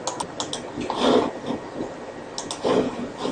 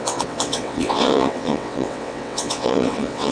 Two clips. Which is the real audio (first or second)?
first